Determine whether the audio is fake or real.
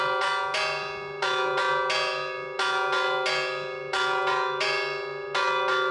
real